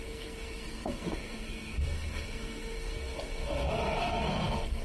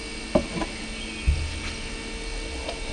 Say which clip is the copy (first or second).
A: first